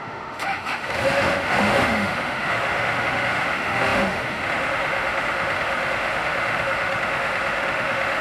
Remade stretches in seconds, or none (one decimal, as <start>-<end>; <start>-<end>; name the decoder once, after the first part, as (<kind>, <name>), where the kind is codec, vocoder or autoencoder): 0.0-8.2 (autoencoder, DAC-VAE)